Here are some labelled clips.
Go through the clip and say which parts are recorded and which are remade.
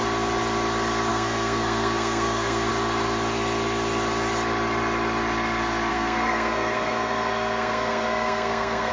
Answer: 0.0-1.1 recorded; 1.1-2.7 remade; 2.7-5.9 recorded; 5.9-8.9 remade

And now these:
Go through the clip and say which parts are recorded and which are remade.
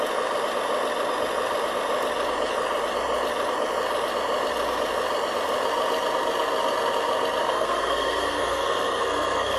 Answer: 0.0-7.4 recorded; 7.4-9.6 remade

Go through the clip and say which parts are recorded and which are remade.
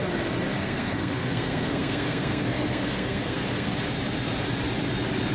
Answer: 0.0-0.5 recorded; 0.5-3.7 remade; 3.7-5.3 recorded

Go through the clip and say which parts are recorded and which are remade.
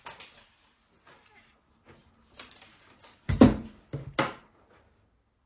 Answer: 0.0-5.5 recorded